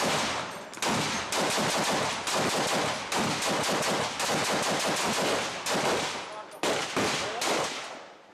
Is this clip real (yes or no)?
yes